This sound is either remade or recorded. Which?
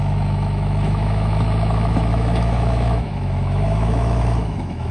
remade